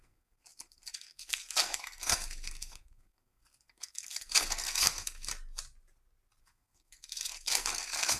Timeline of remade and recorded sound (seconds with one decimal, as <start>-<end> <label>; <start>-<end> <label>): 0.0-5.3 remade; 5.3-6.4 recorded; 6.4-8.2 remade